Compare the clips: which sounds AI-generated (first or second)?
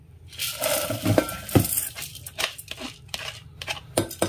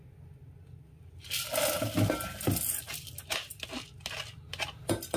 first